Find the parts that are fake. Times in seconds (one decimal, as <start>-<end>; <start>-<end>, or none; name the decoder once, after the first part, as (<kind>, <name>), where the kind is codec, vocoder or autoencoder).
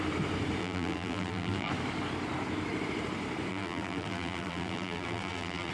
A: 0.6-1.7 (vocoder, BigVGAN v2); 3.5-5.7